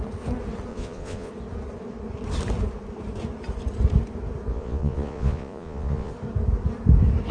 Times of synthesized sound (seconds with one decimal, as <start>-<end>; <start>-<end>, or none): 0.7-1.3; 4.5-6.1